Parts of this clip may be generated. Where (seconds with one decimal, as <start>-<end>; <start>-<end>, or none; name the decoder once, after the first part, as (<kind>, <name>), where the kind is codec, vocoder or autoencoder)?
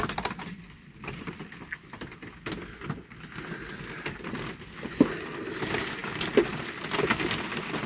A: none